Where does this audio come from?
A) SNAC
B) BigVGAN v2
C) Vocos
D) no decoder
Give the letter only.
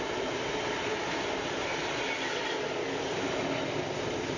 D